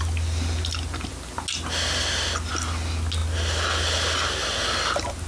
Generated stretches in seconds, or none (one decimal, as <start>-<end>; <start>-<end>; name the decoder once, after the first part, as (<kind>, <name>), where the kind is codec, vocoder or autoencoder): none